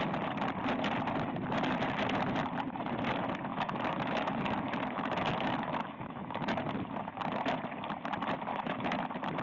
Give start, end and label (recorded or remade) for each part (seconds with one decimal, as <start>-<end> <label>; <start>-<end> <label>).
0.0-3.5 recorded; 3.5-6.7 remade; 6.7-8.5 recorded; 8.5-9.0 remade; 9.0-9.4 recorded